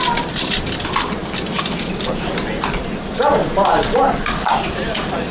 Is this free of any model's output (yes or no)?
yes